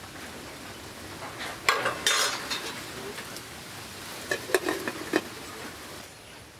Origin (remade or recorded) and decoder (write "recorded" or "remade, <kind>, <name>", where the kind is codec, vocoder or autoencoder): recorded